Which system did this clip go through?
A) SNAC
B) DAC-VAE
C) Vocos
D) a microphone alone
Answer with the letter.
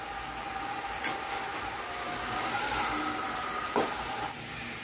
D